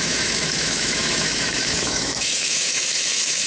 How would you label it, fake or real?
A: fake